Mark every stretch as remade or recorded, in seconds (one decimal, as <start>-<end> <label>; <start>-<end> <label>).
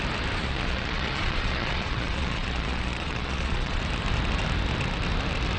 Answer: 0.0-0.4 recorded; 0.4-3.8 remade; 3.8-5.6 recorded